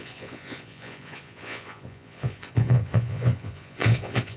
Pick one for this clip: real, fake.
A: fake